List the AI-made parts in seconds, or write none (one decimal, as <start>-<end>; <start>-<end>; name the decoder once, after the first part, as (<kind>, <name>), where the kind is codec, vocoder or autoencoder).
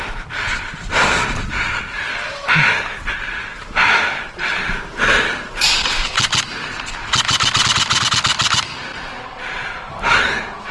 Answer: none